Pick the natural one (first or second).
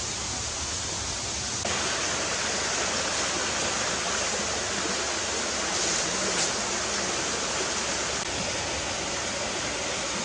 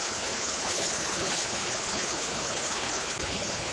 first